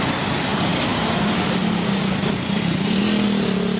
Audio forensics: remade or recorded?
recorded